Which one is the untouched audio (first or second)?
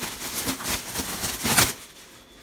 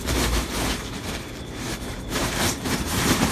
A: first